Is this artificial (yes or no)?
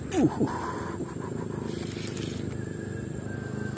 no